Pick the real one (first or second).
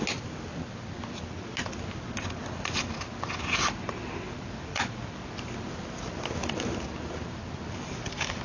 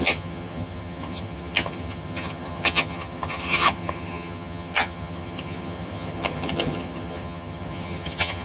first